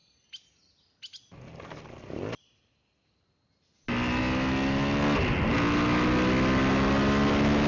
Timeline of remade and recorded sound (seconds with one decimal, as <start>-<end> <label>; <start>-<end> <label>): 0.0-7.7 recorded

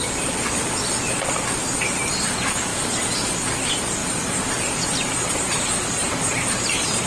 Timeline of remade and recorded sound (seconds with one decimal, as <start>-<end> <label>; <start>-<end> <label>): 0.0-2.7 recorded; 2.7-3.3 remade; 3.3-4.0 recorded; 4.0-7.1 remade

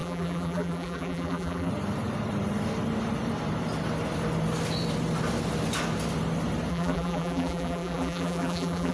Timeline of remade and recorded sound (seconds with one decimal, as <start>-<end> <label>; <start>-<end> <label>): 0.0-1.7 remade; 1.7-6.7 recorded; 6.7-8.9 remade

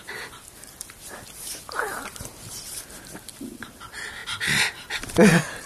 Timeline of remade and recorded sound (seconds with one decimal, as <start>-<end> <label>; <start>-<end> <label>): 0.0-5.7 recorded